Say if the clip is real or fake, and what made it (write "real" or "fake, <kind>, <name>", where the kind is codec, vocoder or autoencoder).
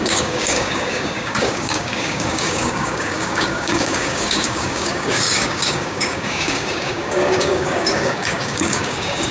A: fake, codec, DAC